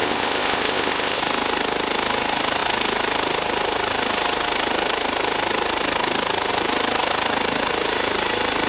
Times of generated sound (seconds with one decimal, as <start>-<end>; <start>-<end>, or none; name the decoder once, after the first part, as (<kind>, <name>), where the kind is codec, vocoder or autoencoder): 0.0-1.2 (codec, ZipCodec)